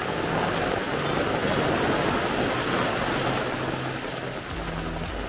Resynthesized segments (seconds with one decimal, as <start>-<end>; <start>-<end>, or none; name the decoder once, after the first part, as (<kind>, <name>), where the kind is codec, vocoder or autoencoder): none